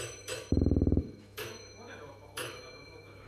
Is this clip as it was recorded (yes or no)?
no